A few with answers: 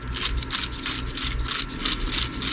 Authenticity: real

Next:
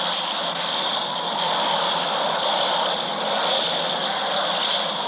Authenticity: real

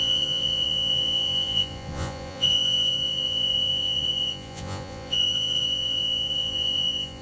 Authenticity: fake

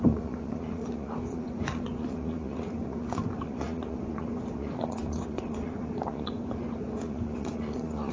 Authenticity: fake